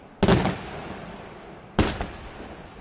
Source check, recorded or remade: recorded